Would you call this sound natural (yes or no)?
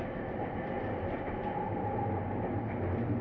yes